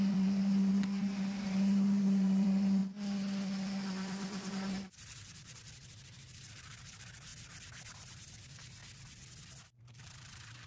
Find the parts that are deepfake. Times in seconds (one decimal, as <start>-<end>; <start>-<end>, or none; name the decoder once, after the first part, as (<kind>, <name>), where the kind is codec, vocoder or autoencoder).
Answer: 0.0-2.8 (vocoder, BigVGAN v2); 4.5-7.3; 7.9-8.8; 9.6-10.7